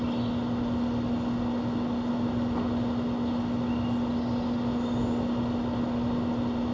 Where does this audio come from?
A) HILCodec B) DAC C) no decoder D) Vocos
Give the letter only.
C